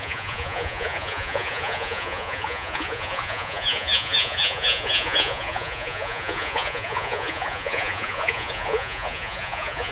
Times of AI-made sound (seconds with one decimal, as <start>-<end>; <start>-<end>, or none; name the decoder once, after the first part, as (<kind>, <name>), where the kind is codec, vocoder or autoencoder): 0.0-9.9 (vocoder, Vocos)